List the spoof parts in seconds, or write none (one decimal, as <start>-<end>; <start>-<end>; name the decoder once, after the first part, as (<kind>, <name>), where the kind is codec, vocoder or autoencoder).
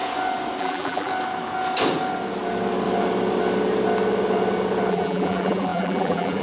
0.6-1.1 (vocoder, BigVGAN v2); 4.9-6.4